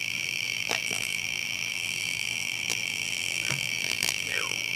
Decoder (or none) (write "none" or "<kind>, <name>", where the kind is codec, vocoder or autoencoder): vocoder, BigVGAN v2